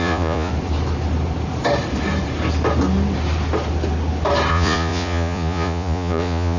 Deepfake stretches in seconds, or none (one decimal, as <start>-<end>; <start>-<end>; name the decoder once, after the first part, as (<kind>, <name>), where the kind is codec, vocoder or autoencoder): 0.0-0.5 (vocoder, Vocos); 4.5-6.6